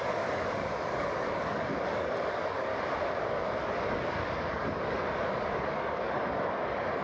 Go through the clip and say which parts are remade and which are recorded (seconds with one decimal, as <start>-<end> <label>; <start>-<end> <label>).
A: 0.0-2.7 remade; 2.7-3.3 recorded; 3.3-7.0 remade